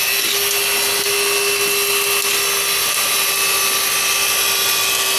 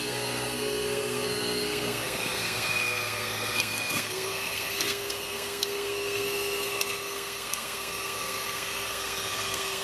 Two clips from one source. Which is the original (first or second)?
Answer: first